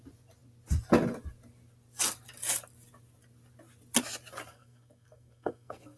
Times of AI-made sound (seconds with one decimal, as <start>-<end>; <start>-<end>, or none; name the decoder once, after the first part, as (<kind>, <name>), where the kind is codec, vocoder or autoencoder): 4.5-6.0 (codec, SNAC)